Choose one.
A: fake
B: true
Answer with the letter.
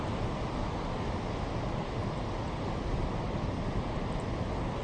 B